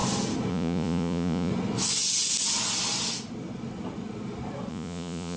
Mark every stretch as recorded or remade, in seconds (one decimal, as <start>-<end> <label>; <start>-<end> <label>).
0.0-0.5 recorded; 0.5-1.5 remade; 1.5-4.7 recorded; 4.7-5.4 remade